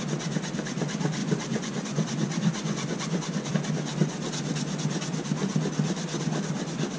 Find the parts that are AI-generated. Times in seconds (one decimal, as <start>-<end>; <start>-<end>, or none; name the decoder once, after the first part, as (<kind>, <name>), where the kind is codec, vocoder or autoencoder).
1.2-3.5 (vocoder, Vocos)